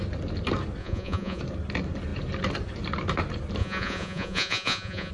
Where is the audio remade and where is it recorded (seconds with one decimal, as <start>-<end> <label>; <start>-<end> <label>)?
0.0-0.8 recorded; 0.8-1.4 remade; 1.4-3.6 recorded; 3.6-5.1 remade